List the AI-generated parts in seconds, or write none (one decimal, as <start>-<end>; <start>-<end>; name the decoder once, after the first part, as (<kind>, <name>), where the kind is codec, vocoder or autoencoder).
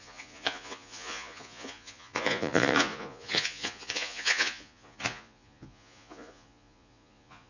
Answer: 0.0-7.5 (vocoder, Vocos)